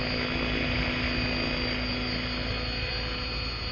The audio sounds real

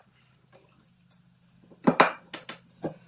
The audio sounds real